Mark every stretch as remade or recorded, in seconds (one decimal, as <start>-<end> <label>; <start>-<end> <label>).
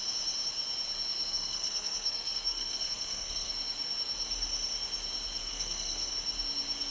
0.0-1.3 recorded; 1.3-3.5 remade; 3.5-5.4 recorded; 5.4-6.1 remade; 6.1-6.9 recorded